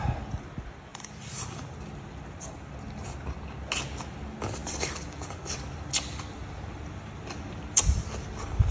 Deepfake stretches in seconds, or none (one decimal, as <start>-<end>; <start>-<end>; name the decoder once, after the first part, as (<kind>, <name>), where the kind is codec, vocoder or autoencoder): 0.9-2.7 (vocoder, BigVGAN v2); 4.6-7.8